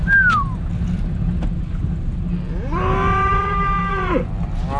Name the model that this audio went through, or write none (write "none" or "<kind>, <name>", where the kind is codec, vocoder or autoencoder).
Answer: none